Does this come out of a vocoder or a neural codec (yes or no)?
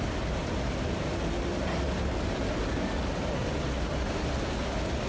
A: no